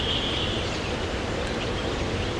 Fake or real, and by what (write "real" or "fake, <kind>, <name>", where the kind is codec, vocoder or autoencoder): fake, vocoder, BigVGAN v2